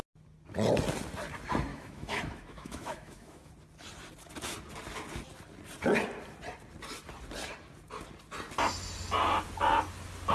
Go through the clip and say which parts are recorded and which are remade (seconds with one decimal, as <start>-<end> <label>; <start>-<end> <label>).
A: 0.0-1.7 recorded; 1.7-3.5 remade; 3.5-10.3 recorded